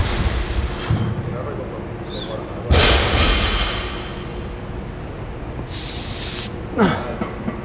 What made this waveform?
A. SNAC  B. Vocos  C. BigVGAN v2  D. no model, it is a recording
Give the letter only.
D